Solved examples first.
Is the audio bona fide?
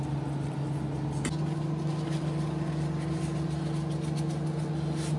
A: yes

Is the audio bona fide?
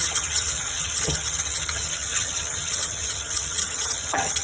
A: no